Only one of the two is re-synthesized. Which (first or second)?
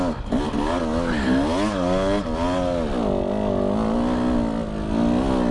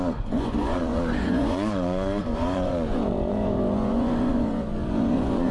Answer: second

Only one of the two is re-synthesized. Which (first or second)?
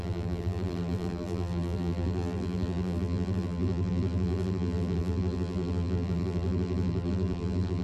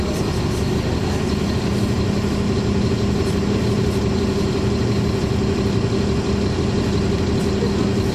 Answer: first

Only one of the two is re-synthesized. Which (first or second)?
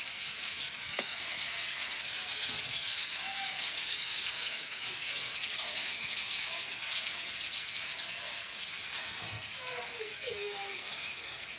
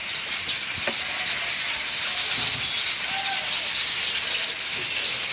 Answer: first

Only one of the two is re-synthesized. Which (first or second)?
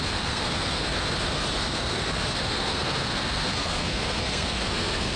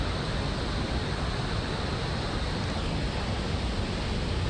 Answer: first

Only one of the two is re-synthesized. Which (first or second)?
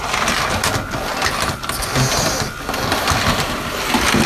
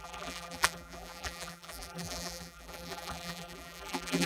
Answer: second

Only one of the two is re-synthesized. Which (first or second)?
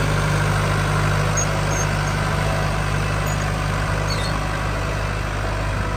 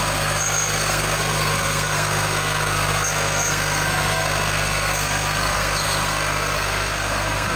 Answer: second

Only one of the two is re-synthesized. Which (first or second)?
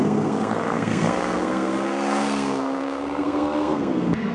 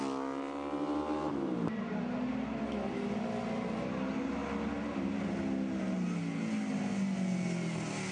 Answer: first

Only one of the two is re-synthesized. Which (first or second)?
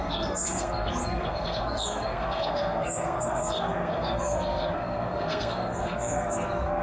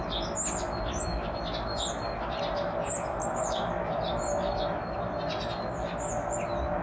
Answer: first